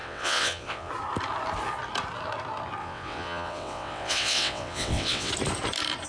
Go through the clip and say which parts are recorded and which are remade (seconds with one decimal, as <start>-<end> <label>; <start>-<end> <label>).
0.0-0.9 remade; 0.9-2.8 recorded; 2.8-5.3 remade; 5.3-6.1 recorded